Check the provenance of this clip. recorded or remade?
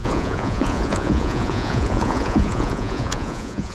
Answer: remade